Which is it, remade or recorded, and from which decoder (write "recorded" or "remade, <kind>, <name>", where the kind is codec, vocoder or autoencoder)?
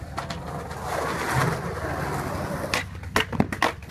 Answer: recorded